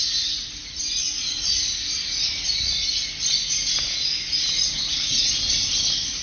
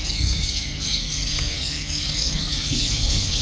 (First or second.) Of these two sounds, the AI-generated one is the second